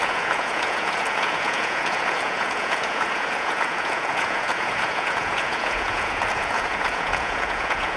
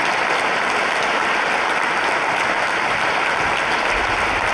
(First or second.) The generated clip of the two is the first